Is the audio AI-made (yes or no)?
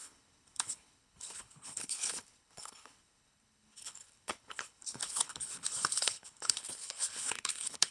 yes